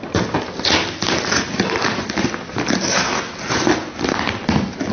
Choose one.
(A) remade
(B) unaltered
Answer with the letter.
B